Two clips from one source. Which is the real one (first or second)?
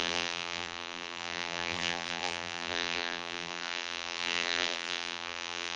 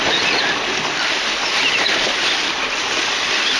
second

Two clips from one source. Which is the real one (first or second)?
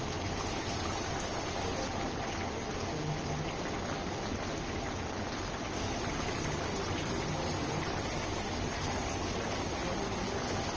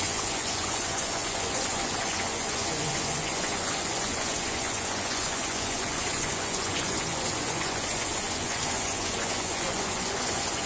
first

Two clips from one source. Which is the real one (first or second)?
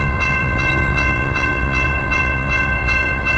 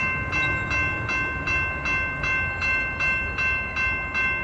second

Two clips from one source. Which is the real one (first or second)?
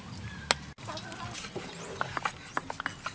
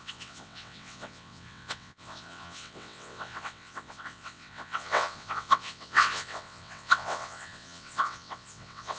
first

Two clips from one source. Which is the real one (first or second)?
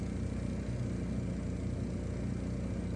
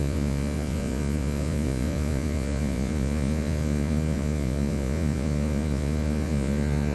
first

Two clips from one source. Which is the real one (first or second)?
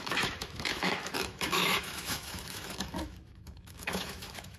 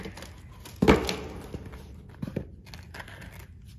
second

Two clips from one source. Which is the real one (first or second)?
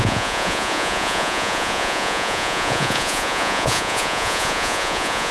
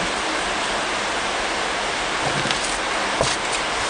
second